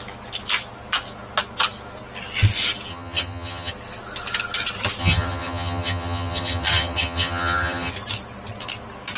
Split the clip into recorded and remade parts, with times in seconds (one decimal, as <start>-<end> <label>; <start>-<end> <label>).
0.0-2.9 recorded; 2.9-3.7 remade; 3.7-5.0 recorded; 5.0-7.9 remade; 7.9-9.2 recorded